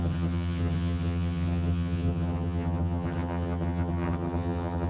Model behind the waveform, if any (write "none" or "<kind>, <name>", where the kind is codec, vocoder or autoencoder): vocoder, HiFi-GAN